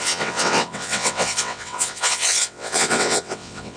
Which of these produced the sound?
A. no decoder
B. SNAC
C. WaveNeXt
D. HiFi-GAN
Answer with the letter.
C